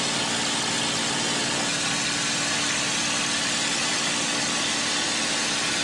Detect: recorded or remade recorded